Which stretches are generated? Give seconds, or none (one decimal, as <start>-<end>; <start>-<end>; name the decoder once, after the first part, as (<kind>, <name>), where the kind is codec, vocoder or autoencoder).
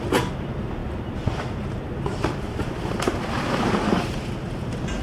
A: none